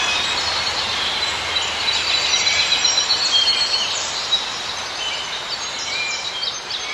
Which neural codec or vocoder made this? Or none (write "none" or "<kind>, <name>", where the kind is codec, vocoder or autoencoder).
vocoder, BigVGAN v2